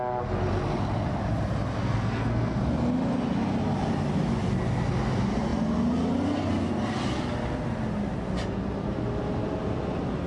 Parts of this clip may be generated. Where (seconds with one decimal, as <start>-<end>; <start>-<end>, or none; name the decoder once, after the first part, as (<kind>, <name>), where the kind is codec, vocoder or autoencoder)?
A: 1.8-2.6 (codec, SNAC)